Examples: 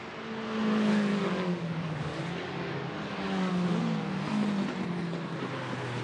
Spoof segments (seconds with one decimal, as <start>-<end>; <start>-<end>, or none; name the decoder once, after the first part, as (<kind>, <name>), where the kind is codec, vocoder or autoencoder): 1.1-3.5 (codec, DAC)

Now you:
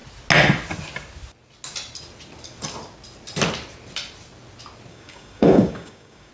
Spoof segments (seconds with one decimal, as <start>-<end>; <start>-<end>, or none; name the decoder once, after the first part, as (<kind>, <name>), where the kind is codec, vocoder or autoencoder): 4.9-6.3 (codec, DAC)

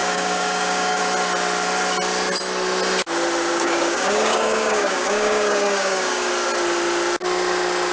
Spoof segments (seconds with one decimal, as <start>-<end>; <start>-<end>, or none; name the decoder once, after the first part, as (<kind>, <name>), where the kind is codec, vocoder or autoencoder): 0.0-1.0 (codec, DAC); 3.5-6.3

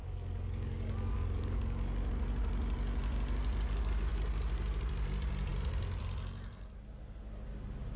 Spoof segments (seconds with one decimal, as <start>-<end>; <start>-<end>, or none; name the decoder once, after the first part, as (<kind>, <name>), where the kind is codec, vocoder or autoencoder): 0.0-2.1 (codec, DAC)